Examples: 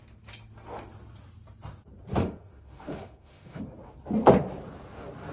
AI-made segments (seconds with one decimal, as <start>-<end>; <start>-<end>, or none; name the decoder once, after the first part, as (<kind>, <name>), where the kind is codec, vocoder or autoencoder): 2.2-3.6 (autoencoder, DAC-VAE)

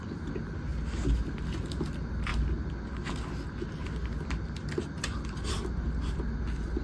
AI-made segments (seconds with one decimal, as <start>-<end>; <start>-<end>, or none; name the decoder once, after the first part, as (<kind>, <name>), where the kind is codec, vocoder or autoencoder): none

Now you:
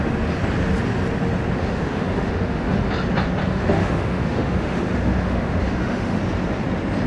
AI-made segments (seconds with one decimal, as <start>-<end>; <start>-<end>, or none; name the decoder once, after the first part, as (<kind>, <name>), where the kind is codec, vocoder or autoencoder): 1.6-2.9 (autoencoder, DAC-VAE); 3.4-6.2

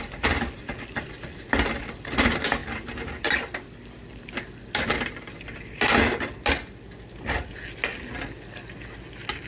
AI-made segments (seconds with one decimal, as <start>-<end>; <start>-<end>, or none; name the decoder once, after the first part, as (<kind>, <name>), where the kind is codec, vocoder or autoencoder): none

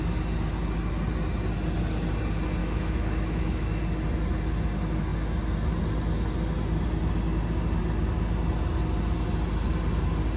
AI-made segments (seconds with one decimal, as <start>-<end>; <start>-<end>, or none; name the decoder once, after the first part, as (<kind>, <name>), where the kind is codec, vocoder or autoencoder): 2.6-3.8 (autoencoder, DAC-VAE)

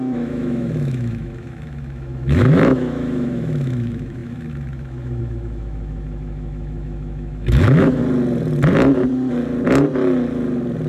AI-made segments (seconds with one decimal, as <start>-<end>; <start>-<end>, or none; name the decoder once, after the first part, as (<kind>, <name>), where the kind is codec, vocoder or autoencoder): 0.0-8.0 (autoencoder, DAC-VAE)